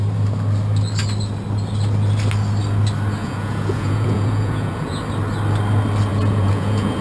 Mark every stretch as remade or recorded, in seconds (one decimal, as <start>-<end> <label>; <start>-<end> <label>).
0.0-3.2 recorded; 3.2-5.0 remade; 5.0-6.1 recorded; 6.1-7.0 remade